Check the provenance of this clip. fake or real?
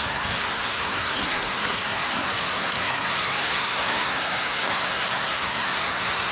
fake